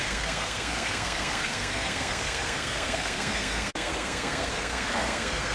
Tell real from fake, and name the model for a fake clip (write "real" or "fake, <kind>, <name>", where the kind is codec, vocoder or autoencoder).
fake, codec, SNAC